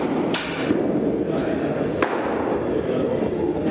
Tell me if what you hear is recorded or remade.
recorded